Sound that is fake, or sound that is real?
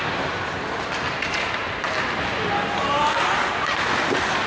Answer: real